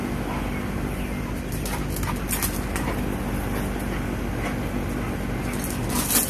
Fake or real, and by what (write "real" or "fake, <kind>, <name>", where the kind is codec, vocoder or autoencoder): real